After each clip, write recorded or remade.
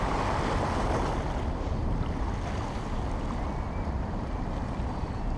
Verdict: recorded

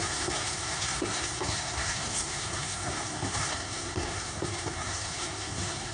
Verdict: remade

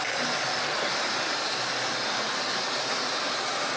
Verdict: recorded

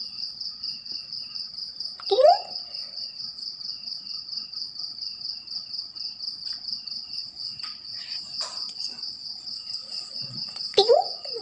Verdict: remade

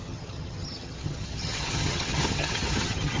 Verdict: remade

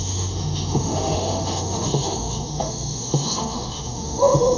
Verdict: remade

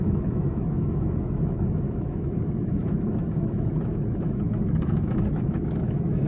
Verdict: remade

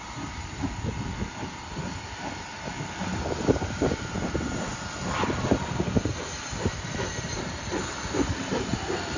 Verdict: remade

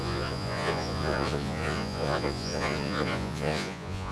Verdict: remade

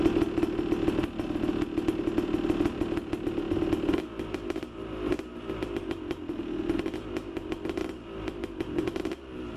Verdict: recorded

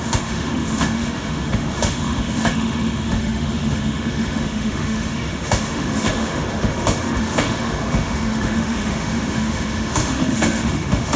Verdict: remade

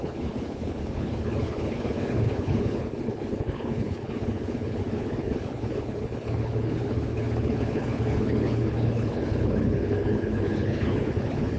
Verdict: remade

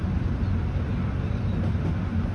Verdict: recorded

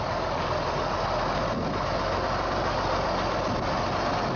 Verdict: recorded